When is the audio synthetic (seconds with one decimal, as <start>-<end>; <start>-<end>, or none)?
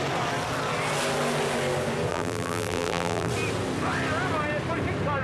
2.1-3.3